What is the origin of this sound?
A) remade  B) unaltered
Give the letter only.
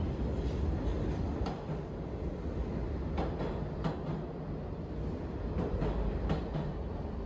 B